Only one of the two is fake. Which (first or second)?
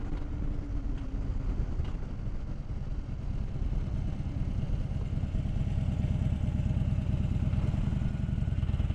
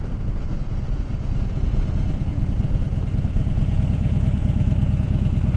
second